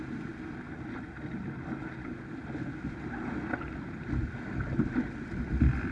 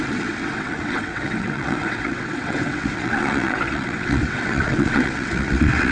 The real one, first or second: first